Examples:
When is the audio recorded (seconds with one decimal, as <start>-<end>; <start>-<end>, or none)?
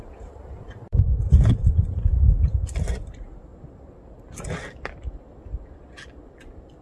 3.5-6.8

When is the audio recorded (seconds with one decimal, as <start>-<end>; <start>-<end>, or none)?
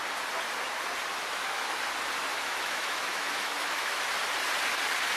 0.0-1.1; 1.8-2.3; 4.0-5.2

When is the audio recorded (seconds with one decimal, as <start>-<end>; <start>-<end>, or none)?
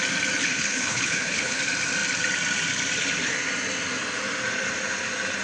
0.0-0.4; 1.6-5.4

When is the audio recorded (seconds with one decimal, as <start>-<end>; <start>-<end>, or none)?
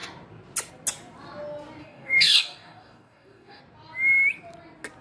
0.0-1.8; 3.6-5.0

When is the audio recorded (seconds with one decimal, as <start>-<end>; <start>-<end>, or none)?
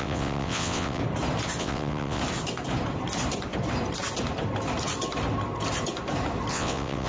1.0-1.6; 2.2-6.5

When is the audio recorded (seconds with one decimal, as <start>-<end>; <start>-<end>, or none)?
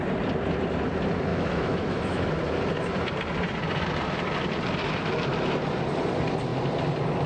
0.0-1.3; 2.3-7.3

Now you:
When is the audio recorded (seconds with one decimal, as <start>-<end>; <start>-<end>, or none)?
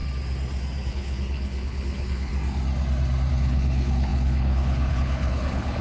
0.0-0.9; 2.3-3.3